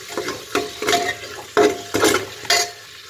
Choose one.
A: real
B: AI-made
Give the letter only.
A